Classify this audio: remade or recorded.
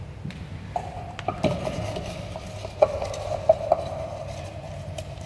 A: recorded